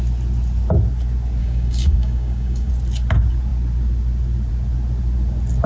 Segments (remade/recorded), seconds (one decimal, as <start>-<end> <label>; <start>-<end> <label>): 0.0-1.4 recorded; 1.4-2.7 remade; 2.7-5.7 recorded